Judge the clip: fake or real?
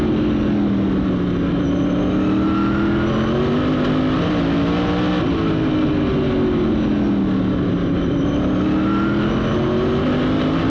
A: real